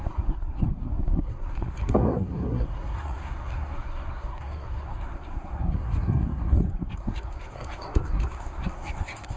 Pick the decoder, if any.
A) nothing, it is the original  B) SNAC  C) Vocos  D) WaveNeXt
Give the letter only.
B